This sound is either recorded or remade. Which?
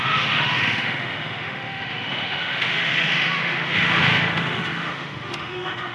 remade